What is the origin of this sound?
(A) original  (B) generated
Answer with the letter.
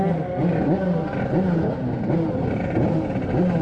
B